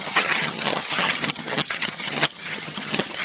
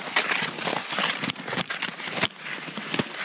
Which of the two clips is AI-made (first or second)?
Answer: first